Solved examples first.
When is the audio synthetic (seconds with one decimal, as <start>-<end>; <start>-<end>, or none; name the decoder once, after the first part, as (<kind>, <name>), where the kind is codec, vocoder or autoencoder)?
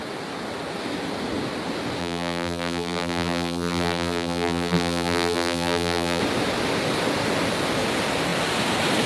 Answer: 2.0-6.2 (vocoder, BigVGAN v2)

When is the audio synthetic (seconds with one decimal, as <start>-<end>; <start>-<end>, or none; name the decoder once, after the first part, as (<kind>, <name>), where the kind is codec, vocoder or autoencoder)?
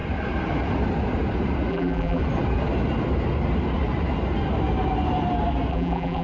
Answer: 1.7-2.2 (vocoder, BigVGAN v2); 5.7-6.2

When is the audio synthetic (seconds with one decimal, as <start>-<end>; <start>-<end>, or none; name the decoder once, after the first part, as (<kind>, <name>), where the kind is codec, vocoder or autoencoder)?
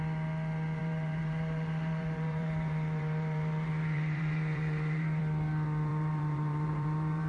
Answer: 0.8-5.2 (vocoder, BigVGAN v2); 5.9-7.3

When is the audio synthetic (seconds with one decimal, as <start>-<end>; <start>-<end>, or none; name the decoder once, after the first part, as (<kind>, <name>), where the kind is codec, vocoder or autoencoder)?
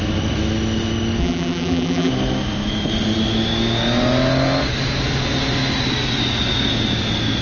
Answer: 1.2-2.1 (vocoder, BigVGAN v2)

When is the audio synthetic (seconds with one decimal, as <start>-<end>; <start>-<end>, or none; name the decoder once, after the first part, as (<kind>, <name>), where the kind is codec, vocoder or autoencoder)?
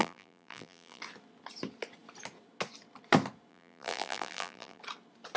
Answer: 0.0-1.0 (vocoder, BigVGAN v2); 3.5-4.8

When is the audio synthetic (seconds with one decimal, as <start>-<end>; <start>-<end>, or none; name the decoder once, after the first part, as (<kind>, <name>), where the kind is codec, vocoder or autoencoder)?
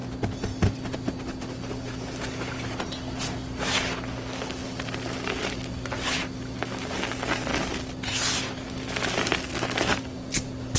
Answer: 0.0-2.8 (vocoder, BigVGAN v2); 4.6-6.2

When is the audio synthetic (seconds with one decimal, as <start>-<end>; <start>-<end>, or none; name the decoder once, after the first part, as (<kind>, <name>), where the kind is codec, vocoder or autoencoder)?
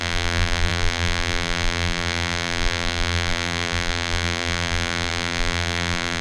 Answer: 0.0-6.2 (vocoder, BigVGAN v2)